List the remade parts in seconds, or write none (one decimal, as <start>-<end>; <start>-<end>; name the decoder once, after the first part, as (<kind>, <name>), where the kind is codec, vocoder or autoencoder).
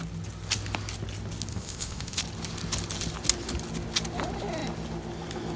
1.5-2.2 (codec, ZipCodec)